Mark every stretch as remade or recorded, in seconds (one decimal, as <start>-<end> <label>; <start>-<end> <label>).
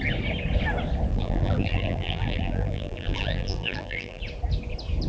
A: 0.0-1.1 recorded; 1.1-4.2 remade; 4.2-5.1 recorded